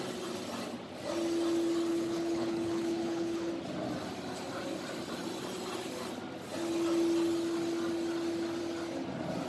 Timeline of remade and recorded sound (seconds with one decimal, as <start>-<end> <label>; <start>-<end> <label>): 0.0-1.9 recorded; 1.9-3.5 remade; 3.5-9.5 recorded